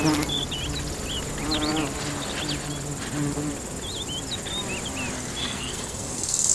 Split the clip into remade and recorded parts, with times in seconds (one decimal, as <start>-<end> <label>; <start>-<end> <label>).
0.0-5.4 recorded; 5.4-6.5 remade